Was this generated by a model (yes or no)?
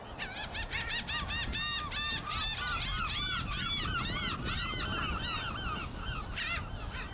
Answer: no